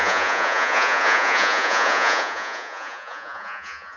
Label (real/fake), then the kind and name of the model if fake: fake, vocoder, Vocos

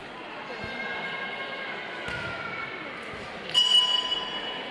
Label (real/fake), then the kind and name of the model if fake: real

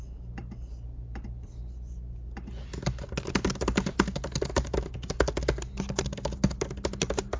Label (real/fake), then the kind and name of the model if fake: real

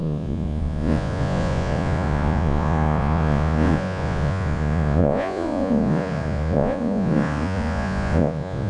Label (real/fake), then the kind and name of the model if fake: fake, vocoder, Vocos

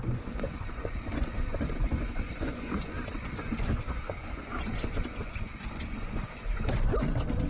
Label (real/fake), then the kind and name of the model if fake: fake, vocoder, Vocos